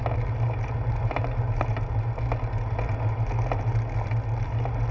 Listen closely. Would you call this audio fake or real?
real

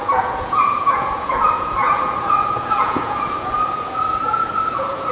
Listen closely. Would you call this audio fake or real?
fake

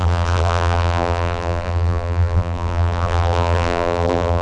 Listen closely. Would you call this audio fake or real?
fake